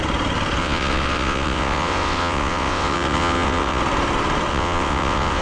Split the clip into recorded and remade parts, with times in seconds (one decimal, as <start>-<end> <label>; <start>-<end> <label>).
0.0-0.6 recorded; 0.6-3.8 remade; 3.8-4.5 recorded; 4.5-5.4 remade